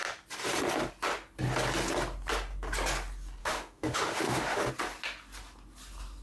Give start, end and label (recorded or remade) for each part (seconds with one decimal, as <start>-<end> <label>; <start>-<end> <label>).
0.0-3.4 recorded; 3.4-4.7 remade; 4.7-6.2 recorded